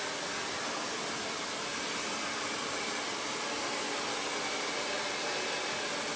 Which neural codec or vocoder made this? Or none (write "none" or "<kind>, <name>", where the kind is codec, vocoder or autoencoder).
none